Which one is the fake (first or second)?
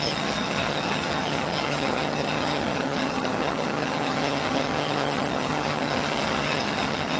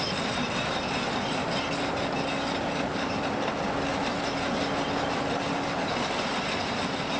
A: first